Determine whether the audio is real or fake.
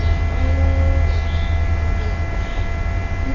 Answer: real